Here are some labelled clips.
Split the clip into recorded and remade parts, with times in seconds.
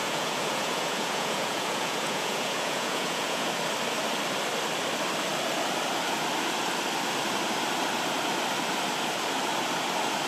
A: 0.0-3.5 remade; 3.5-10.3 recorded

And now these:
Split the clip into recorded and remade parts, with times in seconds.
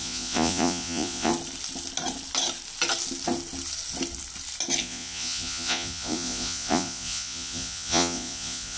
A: 0.0-1.3 remade; 1.3-4.8 recorded; 4.8-8.8 remade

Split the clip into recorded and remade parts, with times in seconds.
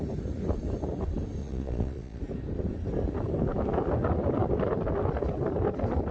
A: 0.0-1.4 recorded; 1.4-2.2 remade; 2.2-6.1 recorded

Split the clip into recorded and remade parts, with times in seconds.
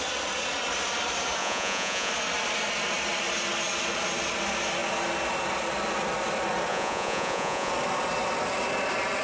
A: 0.0-1.4 recorded; 1.4-2.1 remade; 2.1-6.7 recorded; 6.7-7.7 remade; 7.7-9.2 recorded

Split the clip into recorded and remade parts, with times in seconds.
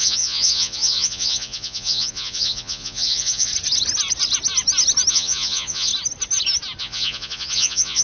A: 0.0-3.5 remade; 3.5-5.1 recorded; 5.1-5.9 remade; 5.9-6.8 recorded; 6.8-8.0 remade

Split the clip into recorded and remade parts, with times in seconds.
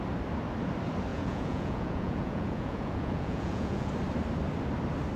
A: 0.0-1.1 recorded; 1.1-3.9 remade; 3.9-5.2 recorded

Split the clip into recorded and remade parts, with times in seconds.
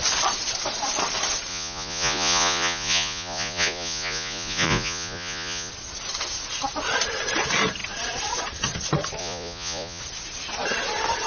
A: 0.0-1.5 recorded; 1.5-5.7 remade; 5.7-9.2 recorded; 9.2-10.0 remade; 10.0-11.3 recorded